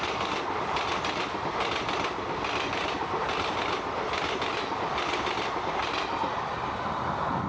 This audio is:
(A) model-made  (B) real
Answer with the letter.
B